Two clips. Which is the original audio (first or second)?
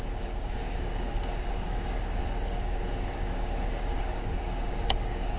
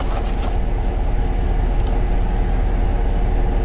second